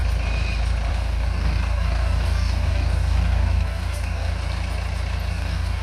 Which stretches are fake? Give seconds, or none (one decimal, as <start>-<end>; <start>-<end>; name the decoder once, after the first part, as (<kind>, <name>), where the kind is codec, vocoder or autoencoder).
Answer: 0.9-4.3 (codec, DAC); 5.3-5.8